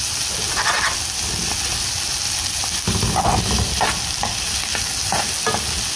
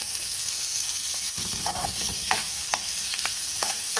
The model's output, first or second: second